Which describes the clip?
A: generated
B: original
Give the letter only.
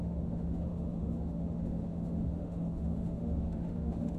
A